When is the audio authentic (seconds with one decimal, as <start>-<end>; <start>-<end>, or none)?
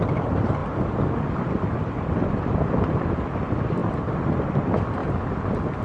0.0-0.6; 1.4-3.8; 4.4-5.0